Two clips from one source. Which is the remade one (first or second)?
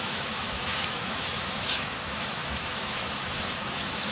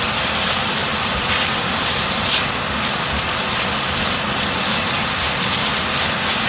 first